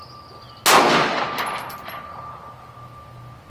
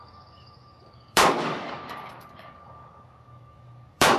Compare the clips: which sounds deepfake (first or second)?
second